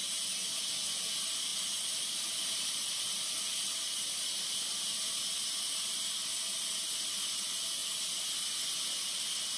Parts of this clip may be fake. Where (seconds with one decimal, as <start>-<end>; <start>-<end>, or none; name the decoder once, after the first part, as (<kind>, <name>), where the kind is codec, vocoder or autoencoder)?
none